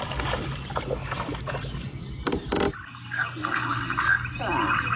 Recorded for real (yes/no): yes